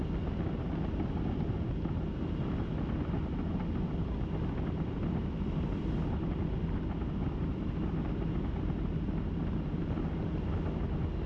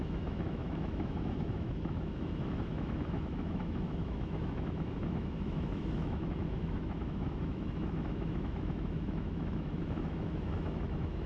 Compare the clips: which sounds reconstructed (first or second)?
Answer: second